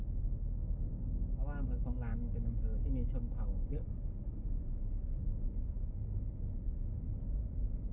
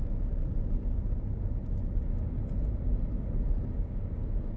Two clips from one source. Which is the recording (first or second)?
second